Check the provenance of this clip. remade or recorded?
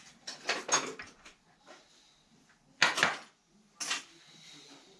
recorded